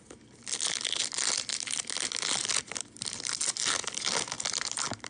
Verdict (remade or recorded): recorded